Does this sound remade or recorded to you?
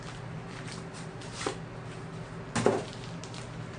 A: recorded